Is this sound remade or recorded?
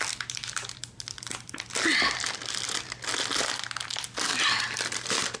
recorded